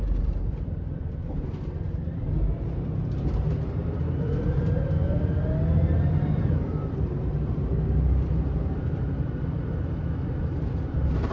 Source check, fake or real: fake